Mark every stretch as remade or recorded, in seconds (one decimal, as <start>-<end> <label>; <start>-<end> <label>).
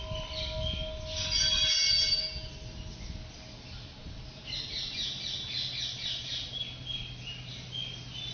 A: 0.0-8.3 recorded